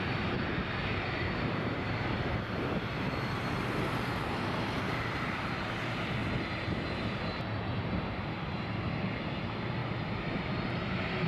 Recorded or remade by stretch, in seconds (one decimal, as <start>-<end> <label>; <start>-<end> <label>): 0.0-6.2 remade; 6.2-7.0 recorded; 7.0-9.8 remade; 9.8-10.9 recorded; 10.9-11.3 remade